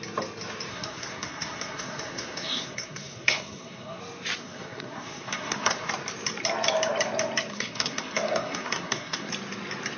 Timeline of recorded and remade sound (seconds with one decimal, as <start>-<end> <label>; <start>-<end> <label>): 0.0-0.7 recorded; 0.7-4.0 remade; 4.0-4.4 recorded; 4.4-5.9 remade; 5.9-7.5 recorded; 7.5-9.3 remade; 9.3-10.0 recorded